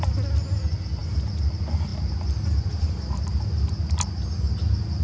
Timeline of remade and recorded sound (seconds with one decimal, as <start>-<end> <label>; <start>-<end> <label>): 0.0-5.0 recorded

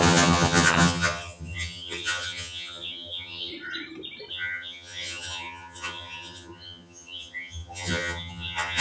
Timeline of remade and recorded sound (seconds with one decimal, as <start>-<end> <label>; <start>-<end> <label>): 0.0-3.5 remade; 3.5-4.3 recorded; 4.3-8.8 remade

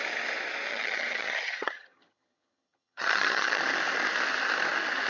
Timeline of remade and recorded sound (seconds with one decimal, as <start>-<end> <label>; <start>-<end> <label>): 0.0-0.7 recorded; 0.7-3.6 remade; 3.6-5.1 recorded

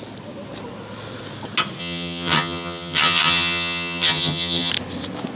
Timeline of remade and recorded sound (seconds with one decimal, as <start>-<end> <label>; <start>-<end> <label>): 0.0-1.8 recorded; 1.8-4.7 remade; 4.7-5.3 recorded

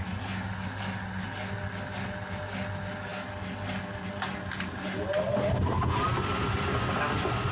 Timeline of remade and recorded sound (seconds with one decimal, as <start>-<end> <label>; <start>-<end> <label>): 0.0-7.5 recorded

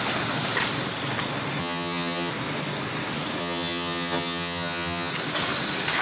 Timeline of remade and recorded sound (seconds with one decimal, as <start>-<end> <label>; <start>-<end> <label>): 0.0-1.6 recorded; 1.6-2.3 remade; 2.3-3.4 recorded; 3.4-5.1 remade; 5.1-6.0 recorded

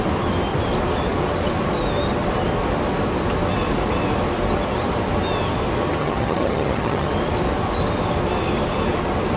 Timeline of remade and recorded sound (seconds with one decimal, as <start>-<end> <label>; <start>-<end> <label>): 0.0-6.0 recorded; 6.0-7.1 remade; 7.1-9.4 recorded